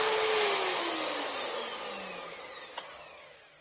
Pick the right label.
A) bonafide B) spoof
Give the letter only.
A